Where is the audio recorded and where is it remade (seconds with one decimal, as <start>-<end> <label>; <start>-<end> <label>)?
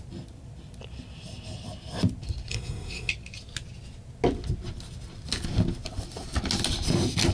0.0-2.5 recorded; 2.5-3.1 remade; 3.1-7.3 recorded